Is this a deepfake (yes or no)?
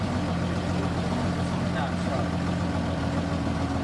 no